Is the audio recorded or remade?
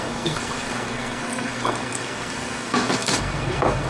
remade